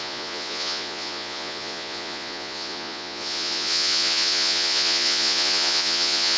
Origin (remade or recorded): remade